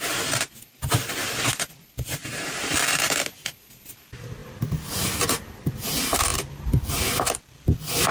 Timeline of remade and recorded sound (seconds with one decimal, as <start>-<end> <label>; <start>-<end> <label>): 0.0-2.2 recorded; 2.2-3.0 remade; 3.0-8.1 recorded